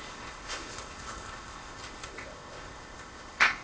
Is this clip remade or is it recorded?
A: remade